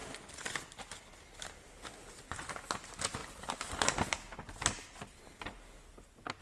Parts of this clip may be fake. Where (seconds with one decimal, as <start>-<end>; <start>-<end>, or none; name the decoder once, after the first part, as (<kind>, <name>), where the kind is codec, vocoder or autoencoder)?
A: none